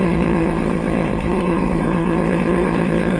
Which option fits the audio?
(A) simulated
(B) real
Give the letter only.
A